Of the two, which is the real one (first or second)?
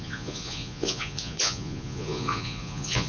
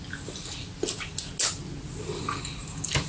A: second